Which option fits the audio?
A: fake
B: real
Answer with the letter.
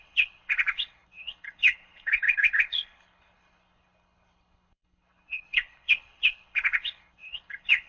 A